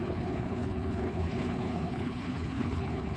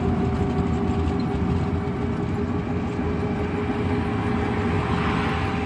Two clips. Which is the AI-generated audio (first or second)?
first